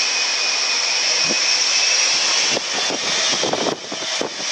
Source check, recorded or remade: recorded